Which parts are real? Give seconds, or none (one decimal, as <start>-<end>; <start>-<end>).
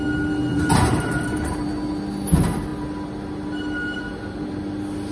0.0-0.5; 1.7-5.1